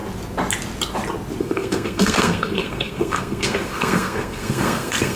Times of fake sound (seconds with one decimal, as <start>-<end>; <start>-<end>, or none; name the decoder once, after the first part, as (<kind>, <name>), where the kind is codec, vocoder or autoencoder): 1.4-5.2 (codec, SNAC)